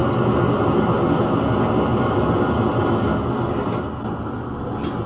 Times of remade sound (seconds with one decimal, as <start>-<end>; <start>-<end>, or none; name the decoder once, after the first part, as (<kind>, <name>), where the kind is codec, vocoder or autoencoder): none